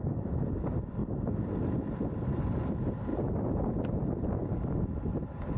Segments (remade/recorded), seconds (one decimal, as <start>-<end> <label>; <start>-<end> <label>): 0.0-1.0 recorded; 1.0-1.5 remade; 1.5-3.1 recorded; 3.1-4.3 remade; 4.3-5.1 recorded; 5.1-5.6 remade